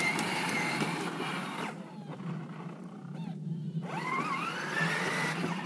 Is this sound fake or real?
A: real